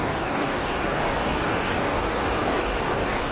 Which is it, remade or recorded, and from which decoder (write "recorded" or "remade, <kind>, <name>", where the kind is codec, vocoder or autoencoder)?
remade, codec, DAC